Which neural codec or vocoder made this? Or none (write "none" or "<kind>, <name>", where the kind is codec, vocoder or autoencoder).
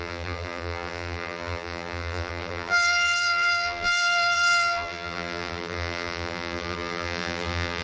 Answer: vocoder, BigVGAN v2